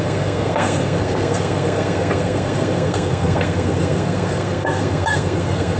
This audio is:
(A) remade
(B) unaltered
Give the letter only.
A